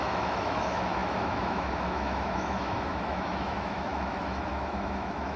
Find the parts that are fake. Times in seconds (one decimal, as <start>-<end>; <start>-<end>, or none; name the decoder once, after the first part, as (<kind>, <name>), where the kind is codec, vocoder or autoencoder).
0.0-5.4 (autoencoder, DAC-VAE)